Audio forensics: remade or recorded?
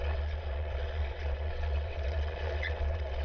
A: remade